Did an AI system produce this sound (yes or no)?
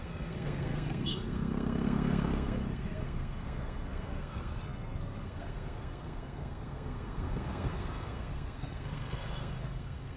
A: yes